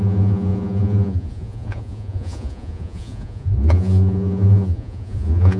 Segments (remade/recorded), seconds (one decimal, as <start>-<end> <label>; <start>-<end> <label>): 0.0-5.6 remade